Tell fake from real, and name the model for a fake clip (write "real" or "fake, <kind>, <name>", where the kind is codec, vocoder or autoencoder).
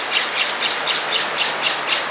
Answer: real